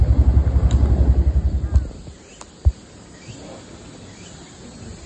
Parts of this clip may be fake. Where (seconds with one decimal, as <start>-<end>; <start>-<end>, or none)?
none